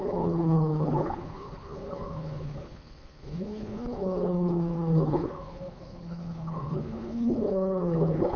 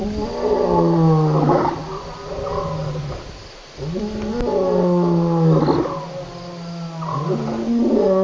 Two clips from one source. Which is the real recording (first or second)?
second